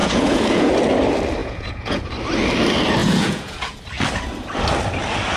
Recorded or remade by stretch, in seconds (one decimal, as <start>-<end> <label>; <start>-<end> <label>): 0.0-0.7 remade; 0.7-1.4 recorded; 1.4-2.1 remade; 2.1-3.0 recorded; 3.0-3.8 remade; 3.8-5.4 recorded